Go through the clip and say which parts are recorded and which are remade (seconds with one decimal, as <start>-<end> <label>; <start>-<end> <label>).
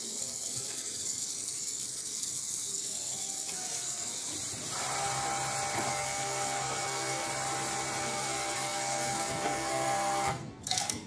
0.0-4.3 remade; 4.3-5.9 recorded; 5.9-7.3 remade; 7.3-8.0 recorded; 8.0-11.1 remade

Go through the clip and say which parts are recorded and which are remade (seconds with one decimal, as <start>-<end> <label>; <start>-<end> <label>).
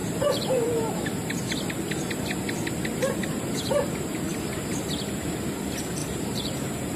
0.0-1.7 remade; 1.7-3.2 recorded; 3.2-3.7 remade; 3.7-6.0 recorded; 6.0-7.0 remade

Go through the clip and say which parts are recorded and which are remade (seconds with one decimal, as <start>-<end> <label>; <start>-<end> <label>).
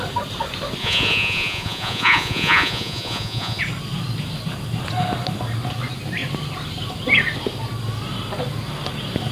0.0-0.8 recorded; 0.8-3.6 remade; 3.6-9.3 recorded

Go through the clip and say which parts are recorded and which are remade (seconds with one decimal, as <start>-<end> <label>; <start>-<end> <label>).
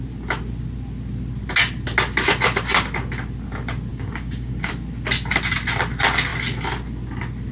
0.0-3.9 recorded; 3.9-4.7 remade; 4.7-7.5 recorded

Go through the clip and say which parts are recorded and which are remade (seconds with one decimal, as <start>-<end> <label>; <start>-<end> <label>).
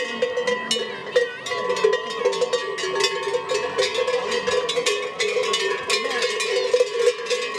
0.0-7.6 recorded